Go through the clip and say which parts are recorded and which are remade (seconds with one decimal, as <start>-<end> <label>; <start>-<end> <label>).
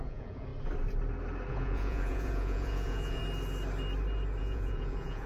0.0-0.5 remade; 0.5-1.5 recorded; 1.5-3.2 remade; 3.2-4.4 recorded; 4.4-5.3 remade